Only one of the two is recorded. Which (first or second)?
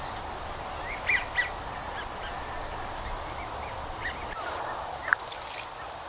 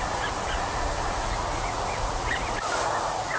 first